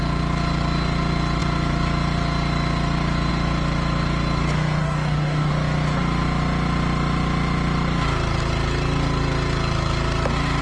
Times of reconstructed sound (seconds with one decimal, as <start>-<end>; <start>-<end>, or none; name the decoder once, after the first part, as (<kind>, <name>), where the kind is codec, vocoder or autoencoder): 4.8-5.5 (codec, DAC)

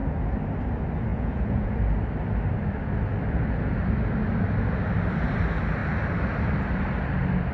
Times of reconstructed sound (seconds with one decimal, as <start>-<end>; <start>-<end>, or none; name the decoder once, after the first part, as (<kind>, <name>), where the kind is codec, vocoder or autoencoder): 1.1-1.8 (vocoder, Vocos)

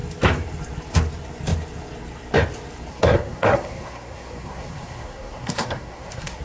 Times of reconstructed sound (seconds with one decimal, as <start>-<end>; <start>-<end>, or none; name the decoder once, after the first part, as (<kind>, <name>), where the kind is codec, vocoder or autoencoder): 2.9-6.4 (codec, SNAC)

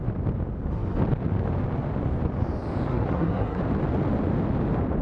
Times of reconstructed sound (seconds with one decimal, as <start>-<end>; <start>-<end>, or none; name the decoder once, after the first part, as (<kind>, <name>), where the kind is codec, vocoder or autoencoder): 2.9-3.6 (codec, SNAC)

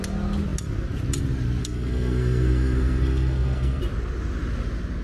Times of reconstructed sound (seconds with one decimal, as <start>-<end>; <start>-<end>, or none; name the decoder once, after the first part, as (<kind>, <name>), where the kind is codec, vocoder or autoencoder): 1.6-3.8 (codec, SNAC)